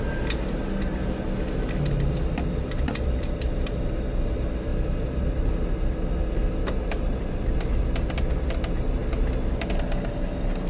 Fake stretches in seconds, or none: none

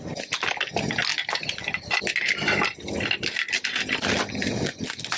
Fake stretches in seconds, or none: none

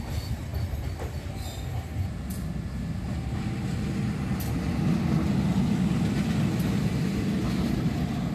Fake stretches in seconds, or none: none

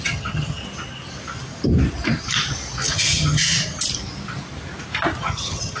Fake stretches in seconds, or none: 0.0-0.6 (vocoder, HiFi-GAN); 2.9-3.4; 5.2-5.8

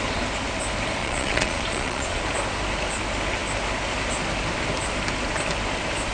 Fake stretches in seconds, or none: 1.0-2.2 (vocoder, Vocos)

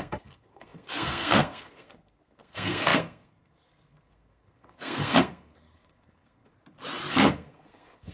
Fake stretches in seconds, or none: 0.0-6.5 (codec, SNAC); 7.1-8.1